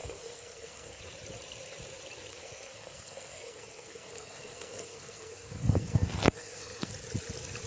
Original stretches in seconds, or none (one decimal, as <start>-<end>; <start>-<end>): 1.0-2.3; 6.9-7.7